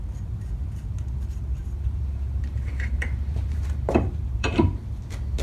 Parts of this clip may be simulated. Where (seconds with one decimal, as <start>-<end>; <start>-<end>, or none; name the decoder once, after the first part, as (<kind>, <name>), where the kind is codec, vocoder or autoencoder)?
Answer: 1.6-4.8 (vocoder, BigVGAN v2)